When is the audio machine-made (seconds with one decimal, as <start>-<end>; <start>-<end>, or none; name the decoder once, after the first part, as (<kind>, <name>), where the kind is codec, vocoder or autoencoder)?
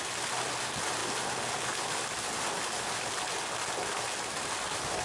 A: none